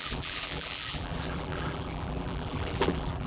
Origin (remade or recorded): remade